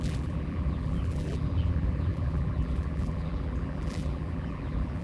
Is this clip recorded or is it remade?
remade